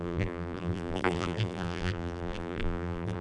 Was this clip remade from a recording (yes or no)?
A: yes